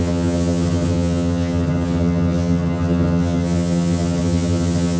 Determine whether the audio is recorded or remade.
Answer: remade